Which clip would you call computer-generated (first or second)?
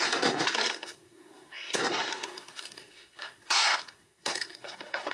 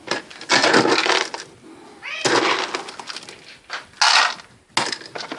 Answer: first